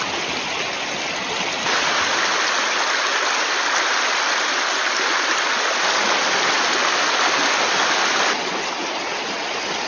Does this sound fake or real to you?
real